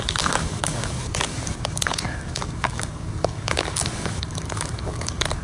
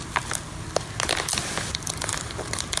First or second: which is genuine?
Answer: second